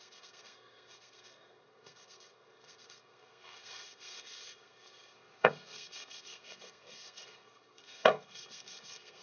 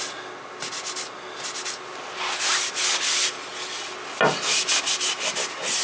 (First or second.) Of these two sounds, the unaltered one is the second